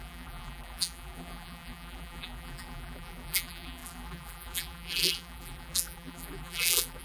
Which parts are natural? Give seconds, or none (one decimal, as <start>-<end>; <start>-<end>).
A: none